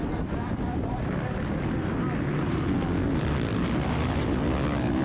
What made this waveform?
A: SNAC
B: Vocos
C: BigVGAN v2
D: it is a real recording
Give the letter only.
D